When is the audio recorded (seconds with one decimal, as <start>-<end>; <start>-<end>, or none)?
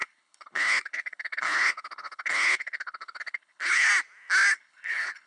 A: 3.9-4.5